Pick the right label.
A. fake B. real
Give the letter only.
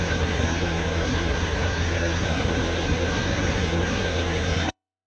A